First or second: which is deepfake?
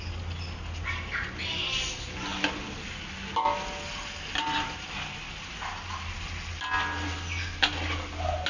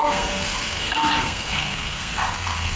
second